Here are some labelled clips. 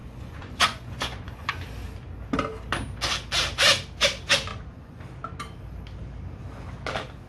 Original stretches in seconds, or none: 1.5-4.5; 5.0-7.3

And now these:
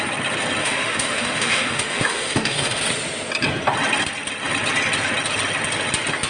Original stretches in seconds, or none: 0.0-0.6; 2.8-6.3

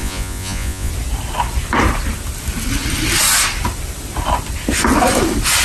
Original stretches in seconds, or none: 0.9-5.6

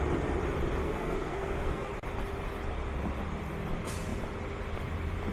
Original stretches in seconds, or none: 0.0-0.8; 1.9-5.3

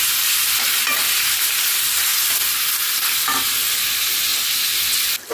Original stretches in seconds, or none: 2.1-3.8; 4.3-5.3

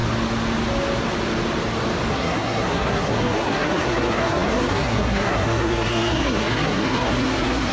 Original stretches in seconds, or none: 0.0-2.1

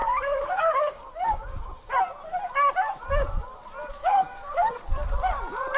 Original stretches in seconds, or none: 2.0-4.0; 4.7-5.8